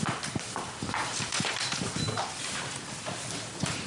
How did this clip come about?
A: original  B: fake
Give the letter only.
B